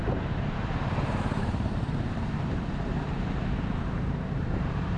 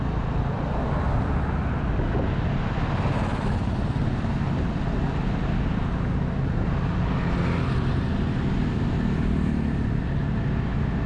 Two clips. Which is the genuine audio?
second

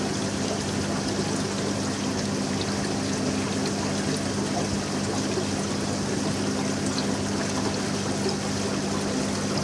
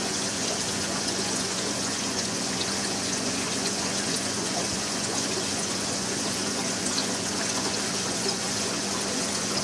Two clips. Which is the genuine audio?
first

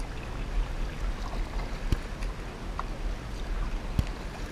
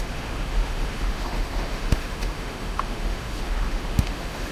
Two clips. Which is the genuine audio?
first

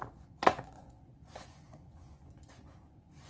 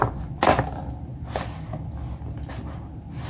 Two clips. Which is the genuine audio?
second